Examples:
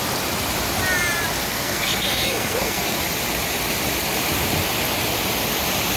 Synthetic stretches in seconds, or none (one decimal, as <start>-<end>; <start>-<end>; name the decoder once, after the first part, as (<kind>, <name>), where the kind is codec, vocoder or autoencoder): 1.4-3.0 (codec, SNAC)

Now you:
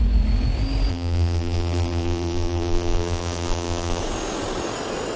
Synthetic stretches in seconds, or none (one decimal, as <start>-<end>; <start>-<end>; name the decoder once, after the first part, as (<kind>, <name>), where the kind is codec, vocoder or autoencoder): 0.9-4.0 (vocoder, BigVGAN v2)

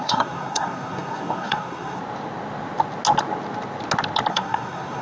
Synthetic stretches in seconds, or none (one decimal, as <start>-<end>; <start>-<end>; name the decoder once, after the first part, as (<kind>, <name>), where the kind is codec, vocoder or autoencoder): 0.0-2.0 (codec, SNAC); 4.3-5.0